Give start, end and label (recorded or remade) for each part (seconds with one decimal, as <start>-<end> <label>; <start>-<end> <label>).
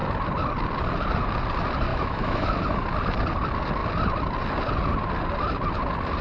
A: 0.0-1.9 recorded; 1.9-2.5 remade; 2.5-6.2 recorded